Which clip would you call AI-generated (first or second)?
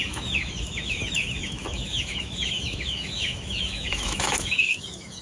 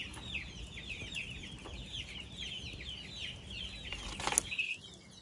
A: first